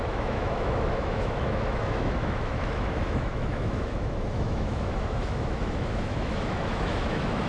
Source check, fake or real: fake